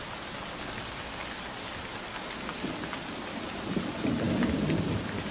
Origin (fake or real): real